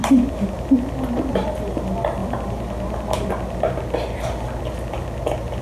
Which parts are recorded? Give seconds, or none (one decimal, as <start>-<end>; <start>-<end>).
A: 0.0-5.6